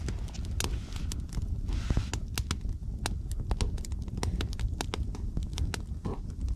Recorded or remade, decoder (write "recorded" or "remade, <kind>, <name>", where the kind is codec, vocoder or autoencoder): recorded